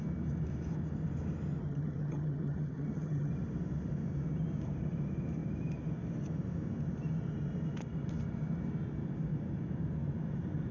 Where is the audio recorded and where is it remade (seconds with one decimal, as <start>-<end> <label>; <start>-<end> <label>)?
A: 0.0-1.6 recorded; 1.6-3.3 remade; 3.3-10.7 recorded